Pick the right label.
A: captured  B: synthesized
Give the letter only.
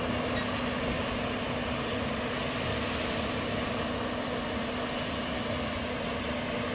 A